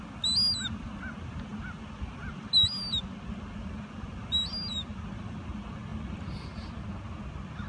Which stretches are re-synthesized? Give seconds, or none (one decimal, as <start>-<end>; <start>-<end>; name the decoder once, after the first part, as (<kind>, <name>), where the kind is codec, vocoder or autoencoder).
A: none